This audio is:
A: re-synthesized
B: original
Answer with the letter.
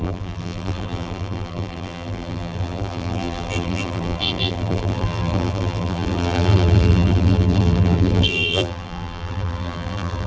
A